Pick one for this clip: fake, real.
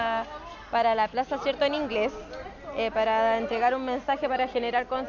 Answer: real